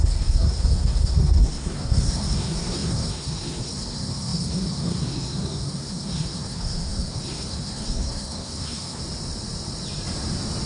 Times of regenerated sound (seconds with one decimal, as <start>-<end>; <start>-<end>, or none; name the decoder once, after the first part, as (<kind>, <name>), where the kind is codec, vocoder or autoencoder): 0.0-9.0 (codec, SNAC)